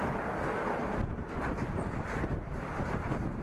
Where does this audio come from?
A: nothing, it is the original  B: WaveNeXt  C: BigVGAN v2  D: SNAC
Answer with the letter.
A